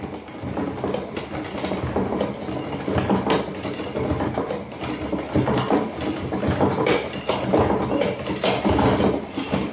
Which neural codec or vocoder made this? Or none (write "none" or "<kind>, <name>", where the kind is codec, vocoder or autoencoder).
none